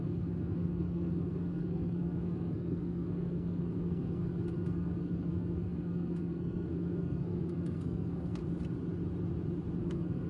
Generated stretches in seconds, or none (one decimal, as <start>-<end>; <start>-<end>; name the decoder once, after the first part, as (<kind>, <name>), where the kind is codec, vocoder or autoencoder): 0.0-8.4 (codec, SNAC); 9.8-10.3

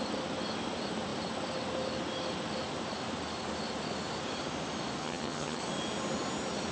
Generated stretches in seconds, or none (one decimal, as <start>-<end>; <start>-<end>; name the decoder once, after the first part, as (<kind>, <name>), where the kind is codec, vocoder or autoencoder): 5.0-5.6 (vocoder, HiFi-GAN)